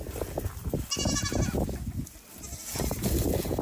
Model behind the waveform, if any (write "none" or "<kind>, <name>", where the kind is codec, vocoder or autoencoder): none